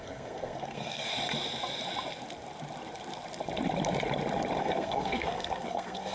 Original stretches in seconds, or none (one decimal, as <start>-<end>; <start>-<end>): 1.1-4.6